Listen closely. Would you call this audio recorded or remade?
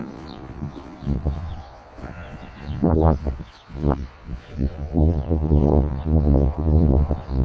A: remade